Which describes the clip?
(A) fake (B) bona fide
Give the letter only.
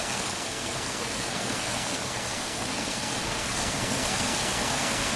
A